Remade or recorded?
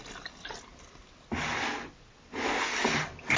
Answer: recorded